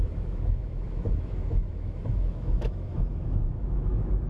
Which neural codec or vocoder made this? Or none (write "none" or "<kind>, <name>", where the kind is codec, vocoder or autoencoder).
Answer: autoencoder, DAC-VAE